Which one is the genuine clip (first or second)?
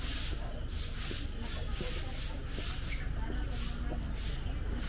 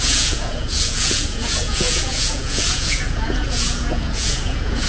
first